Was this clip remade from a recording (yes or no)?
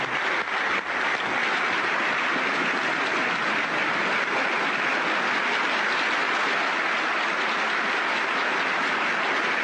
no